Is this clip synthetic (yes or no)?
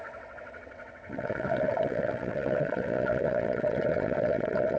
yes